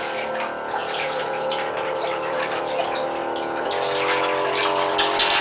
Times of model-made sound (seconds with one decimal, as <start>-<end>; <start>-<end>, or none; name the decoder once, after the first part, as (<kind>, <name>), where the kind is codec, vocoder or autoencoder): 0.8-2.6 (vocoder, BigVGAN v2)